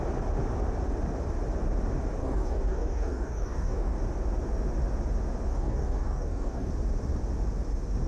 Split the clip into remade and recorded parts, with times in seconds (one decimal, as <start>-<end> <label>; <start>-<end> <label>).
0.0-2.2 recorded; 2.2-4.0 remade; 4.0-5.5 recorded; 5.5-6.7 remade; 6.7-8.1 recorded